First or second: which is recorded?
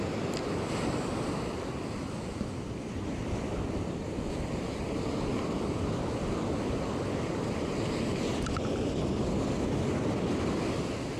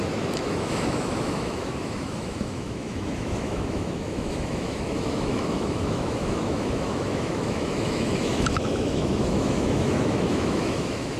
first